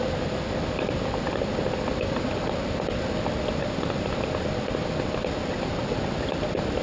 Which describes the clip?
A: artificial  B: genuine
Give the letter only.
B